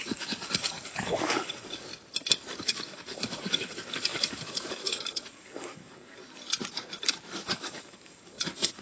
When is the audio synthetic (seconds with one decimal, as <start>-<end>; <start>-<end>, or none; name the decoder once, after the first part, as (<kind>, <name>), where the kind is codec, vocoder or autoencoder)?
0.0-1.9 (codec, DAC); 2.6-6.2; 7.3-8.8

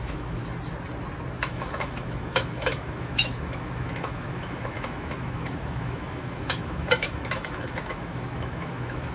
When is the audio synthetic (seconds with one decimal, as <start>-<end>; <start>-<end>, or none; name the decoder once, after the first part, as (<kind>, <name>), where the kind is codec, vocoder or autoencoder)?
0.0-0.4 (autoencoder, DAC-VAE); 1.4-9.1

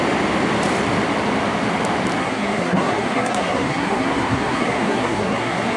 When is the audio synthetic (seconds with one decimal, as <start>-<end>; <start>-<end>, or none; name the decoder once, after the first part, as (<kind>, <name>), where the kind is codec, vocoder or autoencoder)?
2.2-5.8 (codec, SNAC)

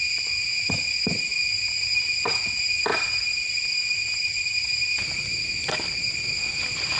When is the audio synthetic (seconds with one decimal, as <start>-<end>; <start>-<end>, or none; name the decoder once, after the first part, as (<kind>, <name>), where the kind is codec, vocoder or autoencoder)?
2.9-6.6 (vocoder, BigVGAN v2)

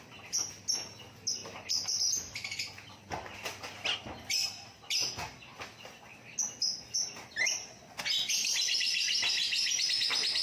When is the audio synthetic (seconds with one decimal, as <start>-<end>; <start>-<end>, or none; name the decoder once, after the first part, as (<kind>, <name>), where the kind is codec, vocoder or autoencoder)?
none

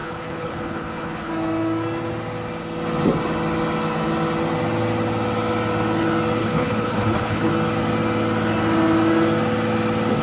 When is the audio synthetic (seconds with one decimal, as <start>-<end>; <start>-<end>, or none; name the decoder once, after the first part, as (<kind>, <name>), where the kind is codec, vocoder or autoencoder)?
0.0-1.3 (codec, HILCodec); 6.4-7.5

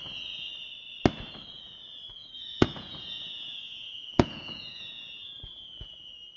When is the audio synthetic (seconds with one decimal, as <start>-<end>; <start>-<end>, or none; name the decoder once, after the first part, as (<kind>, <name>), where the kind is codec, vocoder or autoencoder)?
2.2-6.0 (vocoder, Vocos)